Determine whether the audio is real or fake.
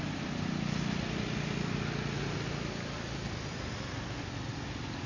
real